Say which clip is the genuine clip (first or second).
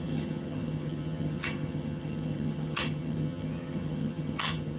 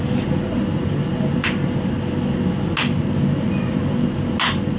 second